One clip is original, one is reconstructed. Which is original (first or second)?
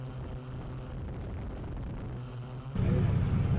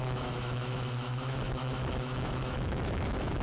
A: first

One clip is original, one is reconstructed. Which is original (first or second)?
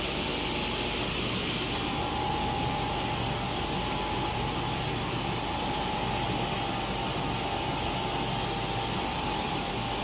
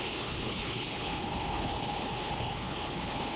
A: first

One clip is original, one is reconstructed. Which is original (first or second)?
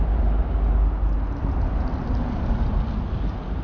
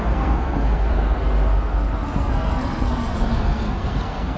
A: first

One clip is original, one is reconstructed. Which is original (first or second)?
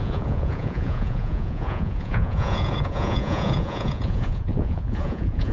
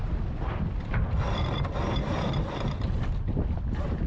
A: second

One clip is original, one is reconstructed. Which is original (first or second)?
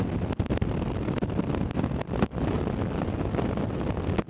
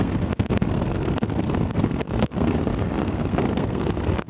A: first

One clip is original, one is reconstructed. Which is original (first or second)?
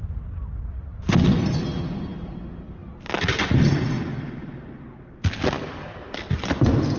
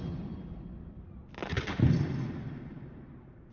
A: first